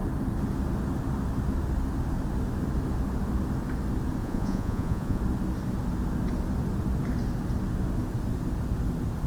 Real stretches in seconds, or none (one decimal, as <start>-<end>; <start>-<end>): 0.0-4.2; 5.2-9.3